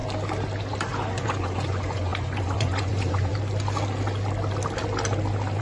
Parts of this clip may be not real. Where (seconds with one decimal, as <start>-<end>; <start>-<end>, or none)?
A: 1.1-3.3